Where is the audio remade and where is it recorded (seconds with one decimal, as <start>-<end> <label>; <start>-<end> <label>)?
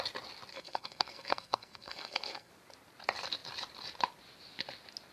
0.0-0.5 recorded; 0.5-2.5 remade; 2.5-5.1 recorded